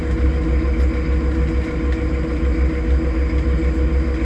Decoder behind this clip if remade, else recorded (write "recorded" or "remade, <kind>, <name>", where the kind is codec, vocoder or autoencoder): recorded